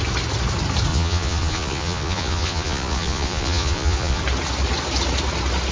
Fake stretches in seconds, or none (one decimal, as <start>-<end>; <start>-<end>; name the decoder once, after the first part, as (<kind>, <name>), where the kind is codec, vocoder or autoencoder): 0.9-4.2 (vocoder, Vocos)